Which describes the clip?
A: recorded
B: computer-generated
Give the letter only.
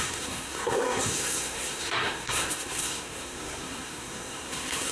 B